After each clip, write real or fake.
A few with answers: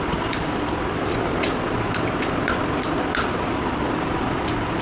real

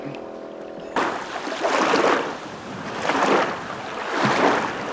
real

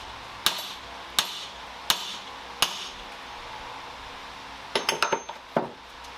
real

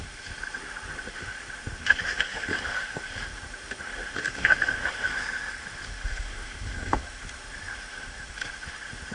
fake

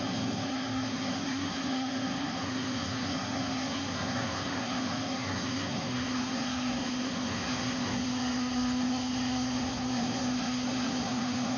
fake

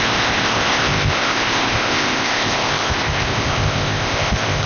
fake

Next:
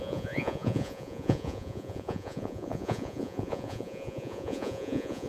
fake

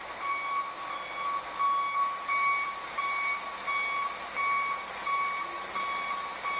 real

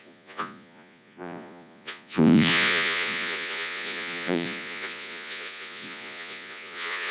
fake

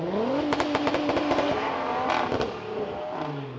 real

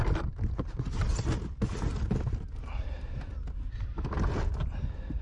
real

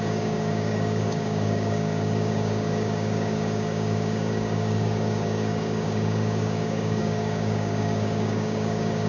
fake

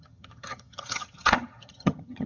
fake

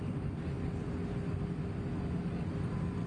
real